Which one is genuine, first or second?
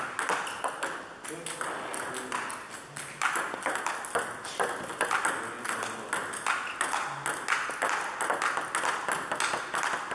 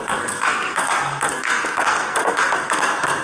first